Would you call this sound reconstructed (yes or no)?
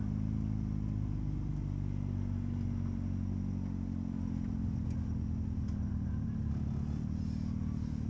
no